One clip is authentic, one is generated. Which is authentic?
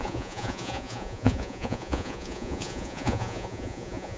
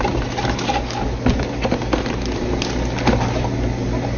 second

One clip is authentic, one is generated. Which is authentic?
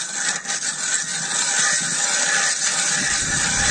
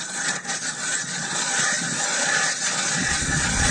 first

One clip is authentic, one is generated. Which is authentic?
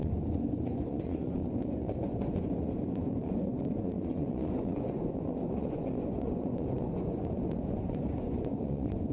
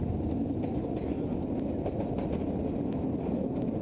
second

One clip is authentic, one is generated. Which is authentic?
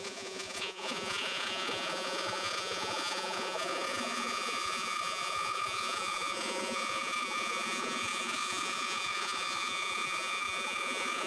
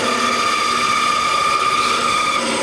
second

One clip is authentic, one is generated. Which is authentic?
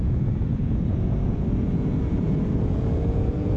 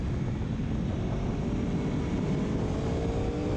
second